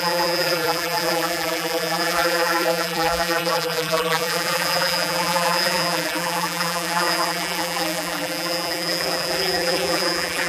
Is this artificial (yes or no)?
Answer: yes